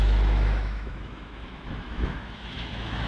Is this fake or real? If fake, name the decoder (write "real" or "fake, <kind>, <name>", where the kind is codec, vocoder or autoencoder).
fake, autoencoder, DAC-VAE